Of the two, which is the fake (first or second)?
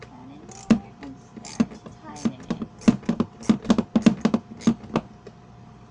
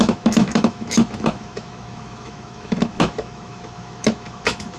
second